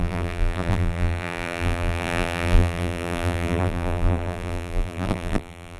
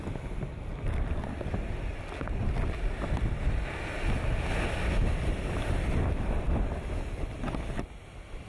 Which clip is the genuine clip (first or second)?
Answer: second